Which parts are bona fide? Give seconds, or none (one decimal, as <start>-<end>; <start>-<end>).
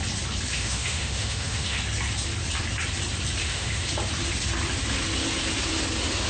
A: 0.0-0.5; 1.8-3.4; 3.9-6.3